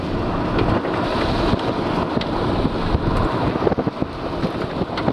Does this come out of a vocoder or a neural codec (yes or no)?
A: no